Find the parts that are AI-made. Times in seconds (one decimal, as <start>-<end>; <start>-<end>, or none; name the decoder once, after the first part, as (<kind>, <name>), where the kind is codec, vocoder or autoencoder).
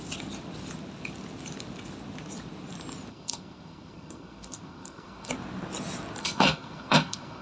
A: 3.1-5.3 (codec, SNAC); 6.2-7.4